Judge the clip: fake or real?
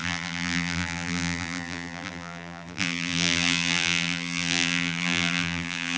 fake